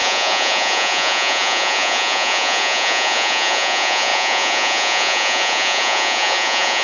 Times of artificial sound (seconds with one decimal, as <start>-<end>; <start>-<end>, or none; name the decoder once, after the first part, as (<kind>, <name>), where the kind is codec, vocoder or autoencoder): 0.0-6.8 (vocoder, Vocos)